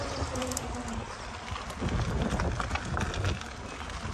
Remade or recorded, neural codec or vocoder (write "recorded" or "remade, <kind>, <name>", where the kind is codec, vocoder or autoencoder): recorded